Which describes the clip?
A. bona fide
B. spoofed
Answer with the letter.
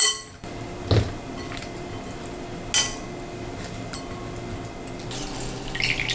A